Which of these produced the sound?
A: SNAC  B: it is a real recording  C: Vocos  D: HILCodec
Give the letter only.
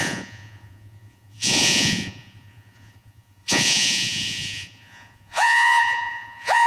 C